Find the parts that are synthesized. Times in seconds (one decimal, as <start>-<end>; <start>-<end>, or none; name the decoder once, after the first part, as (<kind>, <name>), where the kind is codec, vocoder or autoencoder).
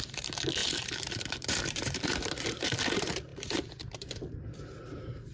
0.0-5.3 (vocoder, BigVGAN v2)